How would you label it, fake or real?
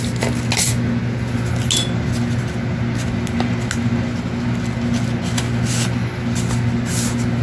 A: real